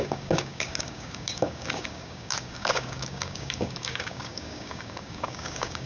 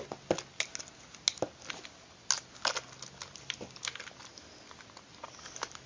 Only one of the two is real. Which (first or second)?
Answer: second